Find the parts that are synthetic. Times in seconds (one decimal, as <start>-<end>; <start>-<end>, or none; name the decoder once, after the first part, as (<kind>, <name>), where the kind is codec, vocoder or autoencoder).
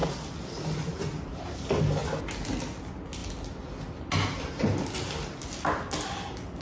none